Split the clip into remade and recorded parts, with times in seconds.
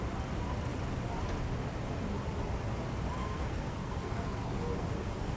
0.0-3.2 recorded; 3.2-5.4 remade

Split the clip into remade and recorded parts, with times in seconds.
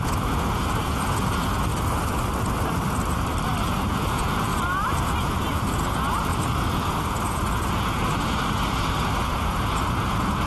0.0-1.7 remade; 1.7-3.6 recorded; 3.6-4.5 remade; 4.5-5.1 recorded; 5.1-10.5 remade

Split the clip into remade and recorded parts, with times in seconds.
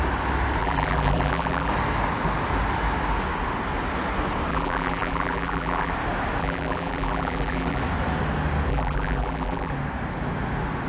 0.0-0.6 recorded; 0.6-1.7 remade; 1.7-4.5 recorded; 4.5-5.9 remade; 5.9-6.4 recorded; 6.4-7.8 remade; 7.8-8.7 recorded; 8.7-9.7 remade; 9.7-10.9 recorded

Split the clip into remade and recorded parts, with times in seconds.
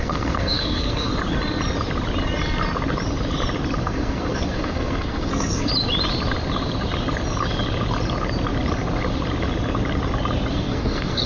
0.0-1.1 remade; 1.1-3.8 recorded; 3.8-5.7 remade; 5.7-10.5 recorded; 10.5-11.3 remade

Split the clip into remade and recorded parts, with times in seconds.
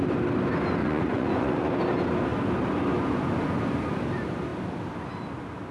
0.0-0.8 recorded; 0.8-1.7 remade; 1.7-5.7 recorded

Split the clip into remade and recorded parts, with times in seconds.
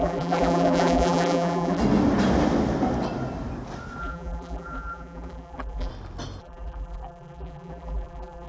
0.0-1.8 remade; 1.8-4.0 recorded; 4.0-5.9 remade; 5.9-6.4 recorded; 6.4-8.5 remade